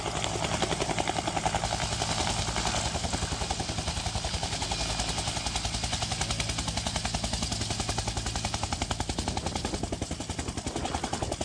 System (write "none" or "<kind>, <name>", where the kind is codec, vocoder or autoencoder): none